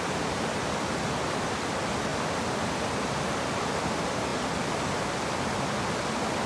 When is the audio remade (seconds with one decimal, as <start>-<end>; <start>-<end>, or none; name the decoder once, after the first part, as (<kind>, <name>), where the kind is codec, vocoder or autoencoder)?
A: none